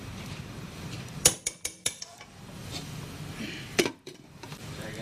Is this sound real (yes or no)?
no